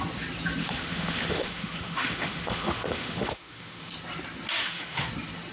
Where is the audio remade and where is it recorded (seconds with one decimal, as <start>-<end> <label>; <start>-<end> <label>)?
0.0-0.6 recorded; 0.6-3.9 remade; 3.9-4.6 recorded; 4.6-5.1 remade; 5.1-5.5 recorded